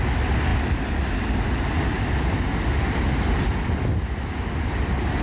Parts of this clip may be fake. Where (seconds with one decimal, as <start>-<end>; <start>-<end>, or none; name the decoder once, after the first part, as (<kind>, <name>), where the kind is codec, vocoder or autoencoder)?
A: none